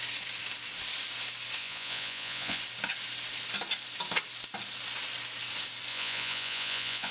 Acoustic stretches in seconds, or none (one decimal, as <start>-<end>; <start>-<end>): 0.0-1.6; 2.6-5.9